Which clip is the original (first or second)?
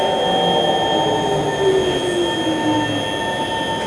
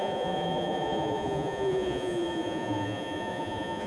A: first